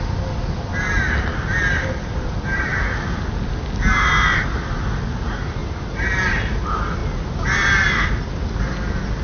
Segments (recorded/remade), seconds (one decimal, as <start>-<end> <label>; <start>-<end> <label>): 0.0-5.6 recorded; 5.6-6.6 remade; 6.6-9.2 recorded